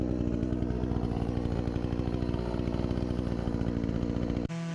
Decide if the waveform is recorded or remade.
recorded